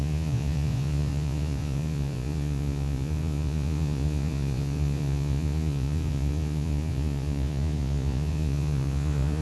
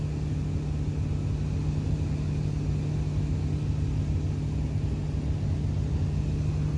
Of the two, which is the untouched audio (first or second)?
second